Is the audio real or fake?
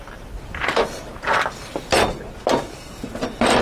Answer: real